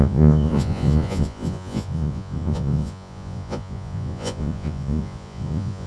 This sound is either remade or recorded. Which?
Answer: remade